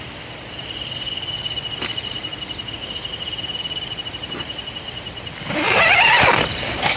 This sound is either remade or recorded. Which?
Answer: recorded